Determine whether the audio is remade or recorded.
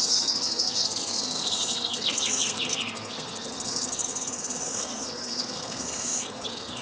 remade